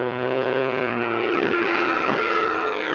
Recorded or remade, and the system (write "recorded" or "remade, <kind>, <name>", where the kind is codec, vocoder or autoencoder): remade, vocoder, HiFi-GAN